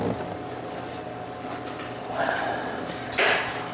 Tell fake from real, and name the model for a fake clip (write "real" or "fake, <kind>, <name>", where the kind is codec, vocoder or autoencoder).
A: real